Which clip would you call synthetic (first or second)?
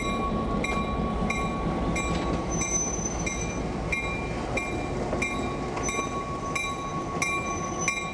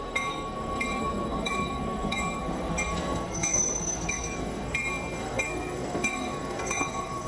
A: second